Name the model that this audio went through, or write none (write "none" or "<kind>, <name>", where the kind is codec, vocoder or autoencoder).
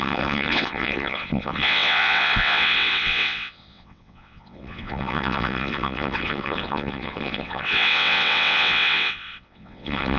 vocoder, WaveNeXt